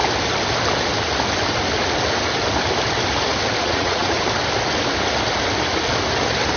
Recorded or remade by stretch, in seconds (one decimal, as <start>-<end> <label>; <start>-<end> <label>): 0.0-3.6 recorded; 3.6-4.2 remade; 4.2-6.6 recorded